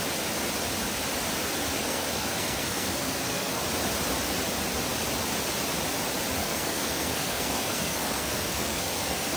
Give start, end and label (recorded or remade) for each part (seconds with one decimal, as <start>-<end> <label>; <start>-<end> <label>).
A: 0.0-1.8 recorded; 1.8-3.6 remade; 3.6-6.4 recorded; 6.4-9.4 remade